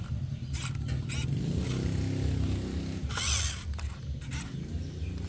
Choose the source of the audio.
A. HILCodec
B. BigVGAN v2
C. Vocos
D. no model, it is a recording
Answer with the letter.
D